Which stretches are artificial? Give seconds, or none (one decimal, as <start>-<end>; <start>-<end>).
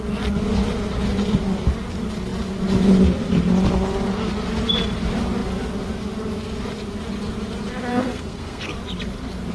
7.9-8.7